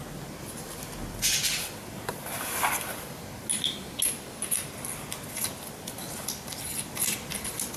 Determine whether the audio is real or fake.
real